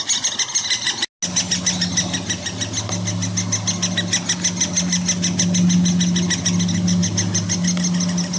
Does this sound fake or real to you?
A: real